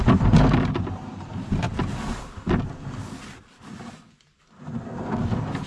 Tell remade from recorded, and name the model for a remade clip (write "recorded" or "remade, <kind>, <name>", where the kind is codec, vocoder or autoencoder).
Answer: recorded